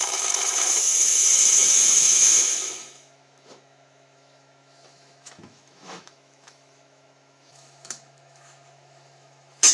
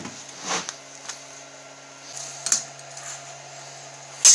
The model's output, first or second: first